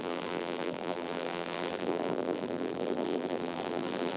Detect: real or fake fake